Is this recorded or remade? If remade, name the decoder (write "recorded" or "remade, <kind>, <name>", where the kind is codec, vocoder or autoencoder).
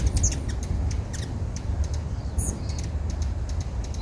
recorded